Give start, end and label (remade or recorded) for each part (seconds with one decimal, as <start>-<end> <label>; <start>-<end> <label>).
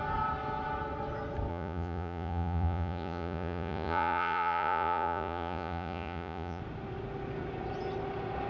0.0-1.5 recorded; 1.5-6.6 remade; 6.6-8.5 recorded